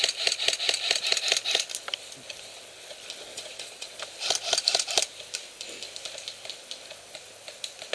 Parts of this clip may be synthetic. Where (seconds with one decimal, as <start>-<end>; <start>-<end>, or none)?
3.3-4.0